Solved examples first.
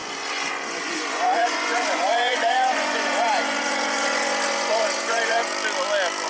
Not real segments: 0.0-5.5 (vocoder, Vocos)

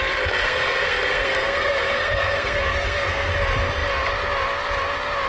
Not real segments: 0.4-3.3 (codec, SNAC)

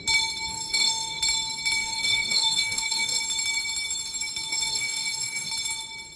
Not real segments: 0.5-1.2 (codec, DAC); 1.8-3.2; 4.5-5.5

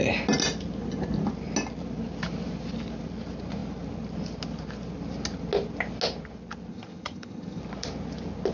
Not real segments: 6.7-7.6 (vocoder, HiFi-GAN)